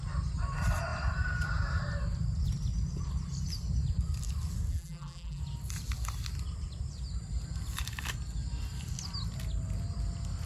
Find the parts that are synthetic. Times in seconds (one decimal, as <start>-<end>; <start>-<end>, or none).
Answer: 4.7-5.4